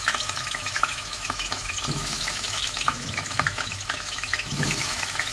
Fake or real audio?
fake